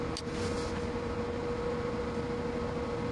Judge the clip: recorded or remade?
recorded